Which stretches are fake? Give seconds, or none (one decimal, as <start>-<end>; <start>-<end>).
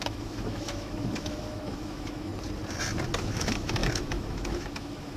0.0-2.3; 3.2-5.2